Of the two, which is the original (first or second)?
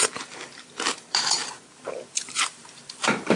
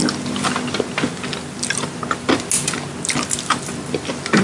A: second